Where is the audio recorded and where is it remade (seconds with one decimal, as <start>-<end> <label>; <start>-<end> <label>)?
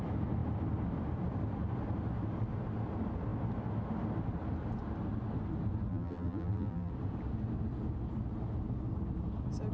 0.0-5.9 recorded; 5.9-6.9 remade; 6.9-9.7 recorded